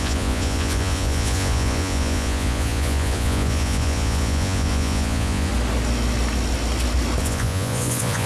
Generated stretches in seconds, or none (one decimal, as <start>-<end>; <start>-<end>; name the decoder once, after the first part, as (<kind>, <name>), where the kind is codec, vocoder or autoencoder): 0.0-5.5 (vocoder, Vocos); 7.2-8.3

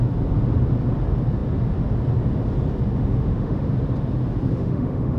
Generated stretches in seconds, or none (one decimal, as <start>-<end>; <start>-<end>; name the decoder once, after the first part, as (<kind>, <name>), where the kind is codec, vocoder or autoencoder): 3.0-3.7 (autoencoder, DAC-VAE); 4.5-5.2